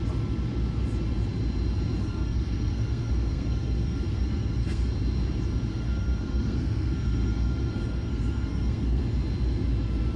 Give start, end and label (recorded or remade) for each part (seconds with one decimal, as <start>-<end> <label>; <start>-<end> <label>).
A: 0.0-2.0 recorded; 2.0-4.9 remade; 4.9-5.7 recorded; 5.7-9.0 remade; 9.0-10.2 recorded